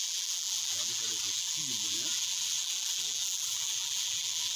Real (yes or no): no